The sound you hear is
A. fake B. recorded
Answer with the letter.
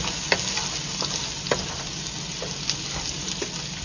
B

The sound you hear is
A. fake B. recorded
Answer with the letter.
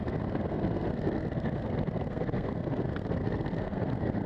A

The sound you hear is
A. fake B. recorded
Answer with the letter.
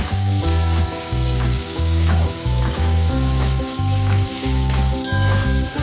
A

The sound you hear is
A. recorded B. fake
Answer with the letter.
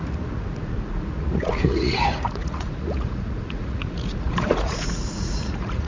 B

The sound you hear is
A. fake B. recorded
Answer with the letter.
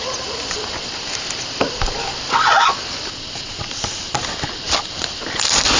B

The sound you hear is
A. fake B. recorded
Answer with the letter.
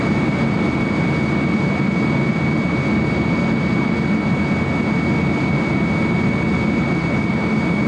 B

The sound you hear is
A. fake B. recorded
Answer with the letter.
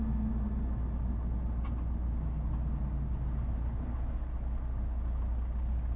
B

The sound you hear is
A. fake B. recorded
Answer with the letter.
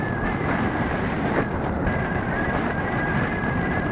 B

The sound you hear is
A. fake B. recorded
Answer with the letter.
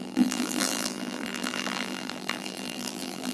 A